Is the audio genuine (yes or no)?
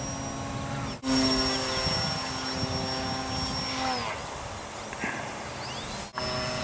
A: yes